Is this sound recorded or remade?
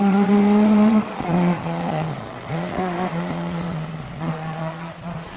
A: remade